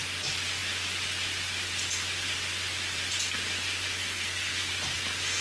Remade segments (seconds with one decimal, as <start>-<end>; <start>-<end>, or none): 4.0-4.7